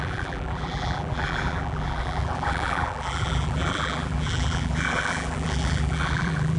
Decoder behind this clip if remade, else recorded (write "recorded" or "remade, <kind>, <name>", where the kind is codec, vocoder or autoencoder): remade, vocoder, BigVGAN v2